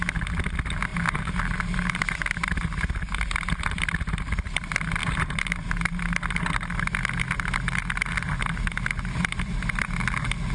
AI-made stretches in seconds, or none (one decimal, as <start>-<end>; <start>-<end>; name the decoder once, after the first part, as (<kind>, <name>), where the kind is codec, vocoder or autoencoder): 0.9-2.0 (vocoder, BigVGAN v2); 5.0-6.0